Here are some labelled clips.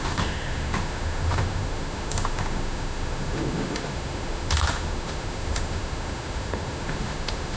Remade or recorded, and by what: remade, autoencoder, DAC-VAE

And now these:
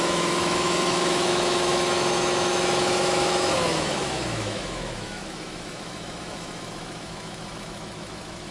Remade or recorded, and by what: remade, autoencoder, DAC-VAE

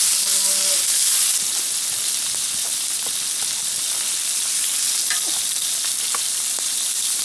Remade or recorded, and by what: recorded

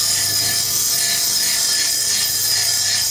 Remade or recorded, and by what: recorded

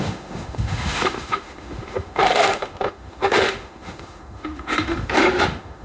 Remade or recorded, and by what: remade, autoencoder, DAC-VAE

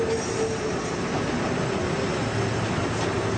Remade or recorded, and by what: recorded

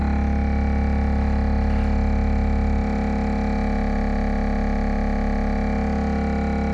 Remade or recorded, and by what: recorded